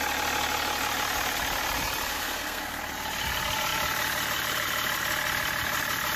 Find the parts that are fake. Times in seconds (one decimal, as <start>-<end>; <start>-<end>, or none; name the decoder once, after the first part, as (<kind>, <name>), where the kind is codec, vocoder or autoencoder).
2.1-2.8 (codec, SNAC)